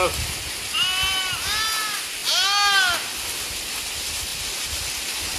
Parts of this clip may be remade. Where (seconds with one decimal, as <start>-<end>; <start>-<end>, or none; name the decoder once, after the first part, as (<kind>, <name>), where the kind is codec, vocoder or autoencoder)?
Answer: none